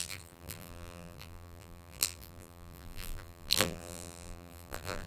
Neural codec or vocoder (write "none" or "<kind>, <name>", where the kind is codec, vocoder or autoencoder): vocoder, BigVGAN v2